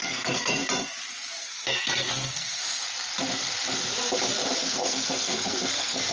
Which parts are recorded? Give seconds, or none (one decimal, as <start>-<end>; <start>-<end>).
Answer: 0.6-1.4; 2.8-4.6